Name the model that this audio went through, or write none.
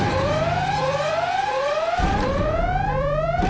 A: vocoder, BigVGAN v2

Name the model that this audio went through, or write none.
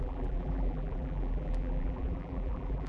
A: vocoder, BigVGAN v2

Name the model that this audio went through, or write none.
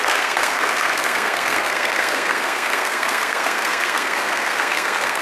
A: codec, SNAC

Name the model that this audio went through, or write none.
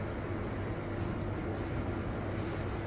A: none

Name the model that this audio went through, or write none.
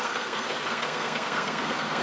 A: codec, SNAC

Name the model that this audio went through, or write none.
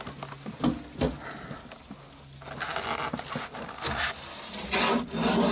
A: none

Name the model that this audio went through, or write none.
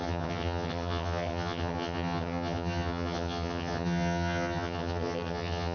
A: vocoder, HiFi-GAN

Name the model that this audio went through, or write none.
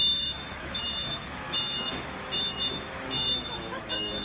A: autoencoder, DAC-VAE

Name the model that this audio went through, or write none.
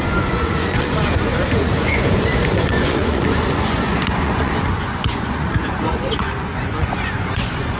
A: vocoder, Vocos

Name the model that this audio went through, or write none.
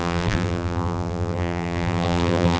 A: vocoder, BigVGAN v2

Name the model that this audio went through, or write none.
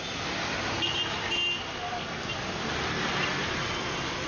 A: none